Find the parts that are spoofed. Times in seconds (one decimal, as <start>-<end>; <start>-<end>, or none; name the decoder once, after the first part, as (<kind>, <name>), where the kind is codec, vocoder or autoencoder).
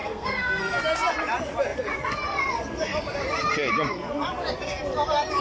0.0-0.8 (codec, SNAC)